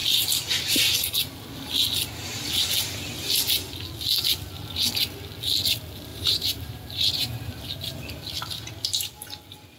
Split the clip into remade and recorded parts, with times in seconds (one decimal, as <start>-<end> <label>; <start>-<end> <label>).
0.0-6.1 recorded; 6.1-7.6 remade; 7.6-9.8 recorded